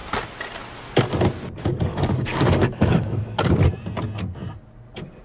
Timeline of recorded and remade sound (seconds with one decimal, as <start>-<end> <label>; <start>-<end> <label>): 0.0-1.9 recorded; 1.9-3.5 remade; 3.5-5.2 recorded